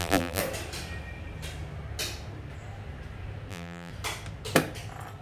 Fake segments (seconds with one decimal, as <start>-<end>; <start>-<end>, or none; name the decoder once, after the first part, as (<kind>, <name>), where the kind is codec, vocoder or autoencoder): 0.0-0.4 (vocoder, BigVGAN v2); 3.5-3.9